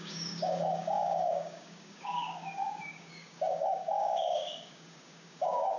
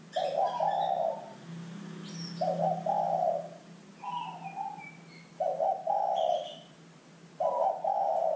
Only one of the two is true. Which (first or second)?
second